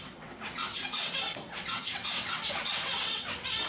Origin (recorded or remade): remade